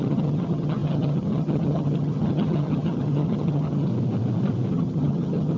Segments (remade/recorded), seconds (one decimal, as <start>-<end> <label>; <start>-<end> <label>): 0.0-3.9 remade; 3.9-4.7 recorded; 4.7-5.6 remade